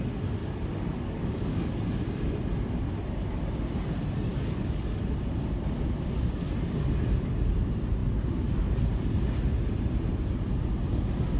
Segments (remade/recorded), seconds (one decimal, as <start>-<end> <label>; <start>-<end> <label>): 0.0-0.4 recorded; 0.4-2.0 remade; 2.0-4.3 recorded; 4.3-5.0 remade; 5.0-11.4 recorded